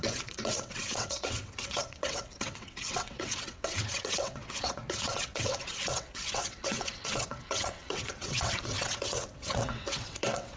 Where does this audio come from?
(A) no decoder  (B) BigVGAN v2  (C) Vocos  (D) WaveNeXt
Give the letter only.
D